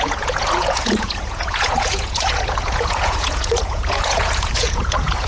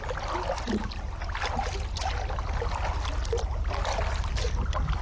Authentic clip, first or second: second